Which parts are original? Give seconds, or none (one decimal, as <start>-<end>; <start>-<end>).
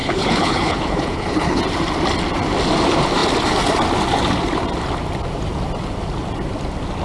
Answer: 1.6-7.0